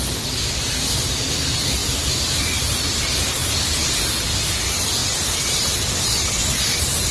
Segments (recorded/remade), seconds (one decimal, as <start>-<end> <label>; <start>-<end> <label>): 0.0-1.8 recorded; 1.8-3.0 remade; 3.0-3.4 recorded; 3.4-4.0 remade; 4.0-5.0 recorded; 5.0-5.7 remade; 5.7-7.1 recorded